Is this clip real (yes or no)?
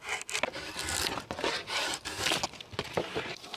yes